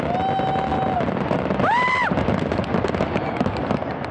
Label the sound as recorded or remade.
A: recorded